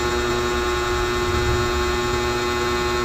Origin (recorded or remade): recorded